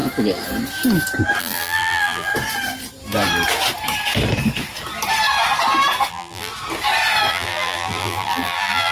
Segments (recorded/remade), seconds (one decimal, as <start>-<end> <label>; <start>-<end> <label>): 0.0-1.4 recorded; 1.4-2.3 remade; 2.3-6.1 recorded; 6.1-6.5 remade; 6.5-7.3 recorded; 7.3-8.9 remade